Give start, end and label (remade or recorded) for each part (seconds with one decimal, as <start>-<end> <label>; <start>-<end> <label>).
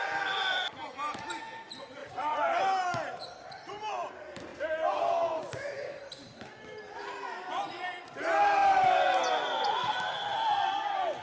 0.0-2.0 recorded; 2.0-2.6 remade; 2.6-11.2 recorded